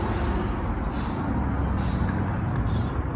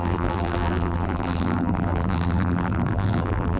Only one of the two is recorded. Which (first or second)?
first